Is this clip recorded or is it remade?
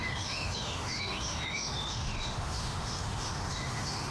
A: remade